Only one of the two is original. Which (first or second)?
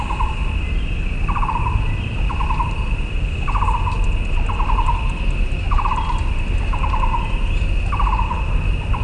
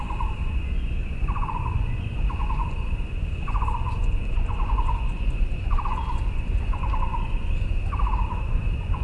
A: first